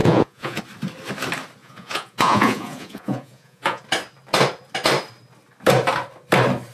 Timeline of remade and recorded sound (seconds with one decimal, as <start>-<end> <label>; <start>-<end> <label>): 0.0-0.6 remade; 0.6-1.6 recorded; 1.6-3.8 remade; 3.8-6.7 recorded